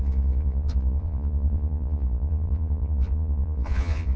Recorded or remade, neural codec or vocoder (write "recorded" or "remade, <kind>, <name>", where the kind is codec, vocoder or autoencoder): remade, vocoder, Vocos